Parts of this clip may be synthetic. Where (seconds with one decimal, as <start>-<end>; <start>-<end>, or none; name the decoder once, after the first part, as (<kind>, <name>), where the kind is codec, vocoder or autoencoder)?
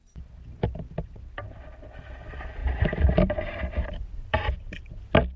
2.6-4.8 (vocoder, BigVGAN v2)